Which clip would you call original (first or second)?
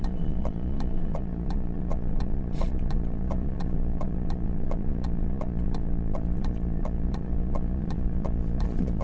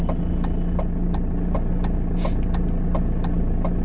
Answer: second